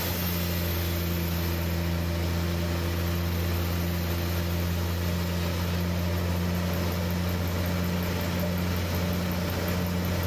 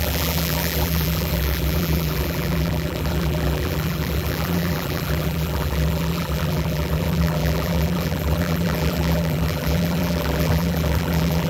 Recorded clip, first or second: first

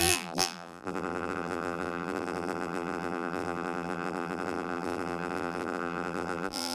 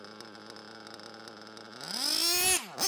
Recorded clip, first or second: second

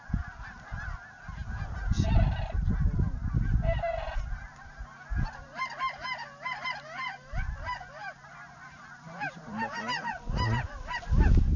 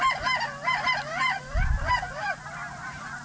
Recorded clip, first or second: first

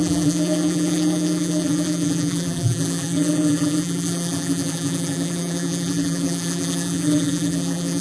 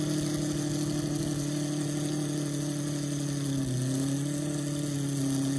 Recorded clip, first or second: second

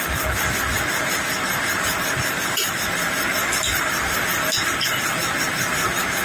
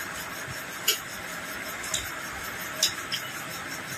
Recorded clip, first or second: second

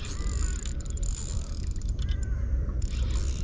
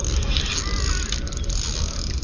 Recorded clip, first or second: second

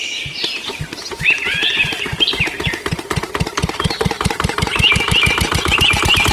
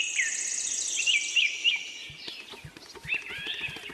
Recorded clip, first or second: second